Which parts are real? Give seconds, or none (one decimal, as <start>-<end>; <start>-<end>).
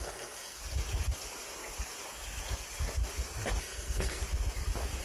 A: 0.6-3.6; 4.2-5.0